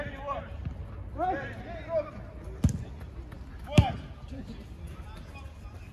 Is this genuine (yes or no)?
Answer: yes